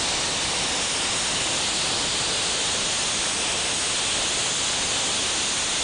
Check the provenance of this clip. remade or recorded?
recorded